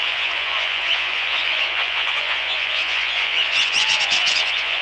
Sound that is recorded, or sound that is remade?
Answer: remade